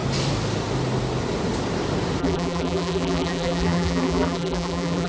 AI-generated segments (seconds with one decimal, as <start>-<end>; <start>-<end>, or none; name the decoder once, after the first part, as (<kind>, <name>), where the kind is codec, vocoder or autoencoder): 2.2-5.1 (vocoder, BigVGAN v2)